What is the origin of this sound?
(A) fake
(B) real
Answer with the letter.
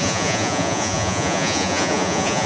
A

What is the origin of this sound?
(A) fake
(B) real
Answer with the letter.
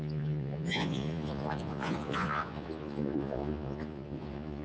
A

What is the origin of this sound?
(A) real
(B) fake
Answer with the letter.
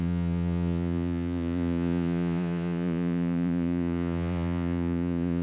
B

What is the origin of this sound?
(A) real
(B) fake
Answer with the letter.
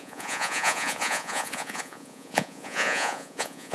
B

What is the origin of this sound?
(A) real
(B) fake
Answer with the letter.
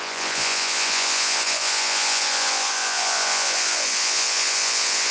B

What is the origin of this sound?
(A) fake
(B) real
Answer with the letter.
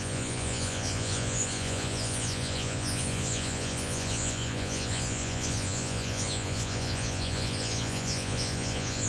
A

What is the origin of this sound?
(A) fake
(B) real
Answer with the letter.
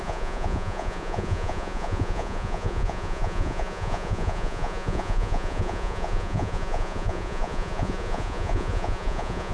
A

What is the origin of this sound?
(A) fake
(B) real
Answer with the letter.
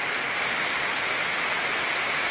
B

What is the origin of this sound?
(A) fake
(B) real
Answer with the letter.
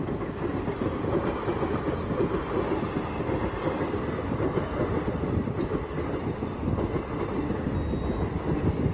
B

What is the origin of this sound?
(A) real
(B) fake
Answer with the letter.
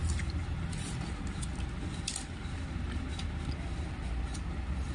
A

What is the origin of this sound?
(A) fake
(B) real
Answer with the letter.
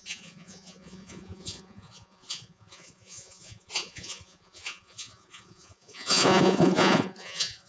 A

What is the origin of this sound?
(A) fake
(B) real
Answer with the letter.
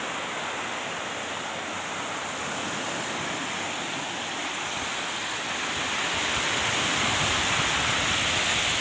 B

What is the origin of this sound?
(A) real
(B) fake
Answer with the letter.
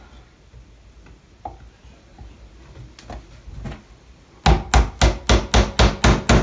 A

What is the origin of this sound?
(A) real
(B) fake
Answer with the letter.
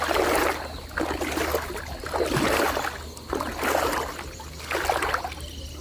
A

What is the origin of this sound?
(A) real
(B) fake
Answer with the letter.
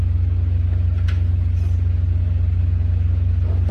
A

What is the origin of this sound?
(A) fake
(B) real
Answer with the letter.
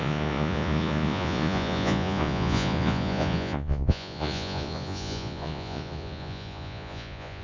A